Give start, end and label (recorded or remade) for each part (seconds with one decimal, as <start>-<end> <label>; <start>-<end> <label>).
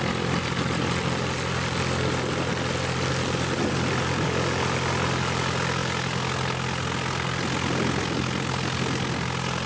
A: 0.0-9.7 recorded